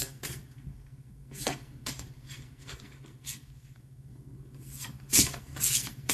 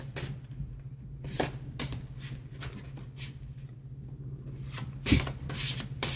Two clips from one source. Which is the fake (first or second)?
first